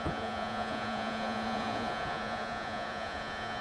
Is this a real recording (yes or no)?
no